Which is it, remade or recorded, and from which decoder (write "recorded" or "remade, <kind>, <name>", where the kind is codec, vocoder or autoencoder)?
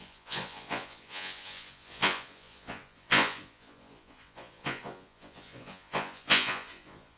remade, vocoder, Vocos